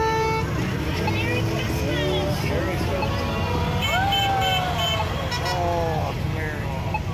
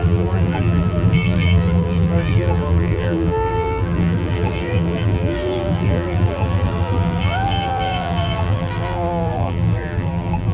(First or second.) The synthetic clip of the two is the second